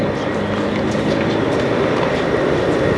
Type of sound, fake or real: real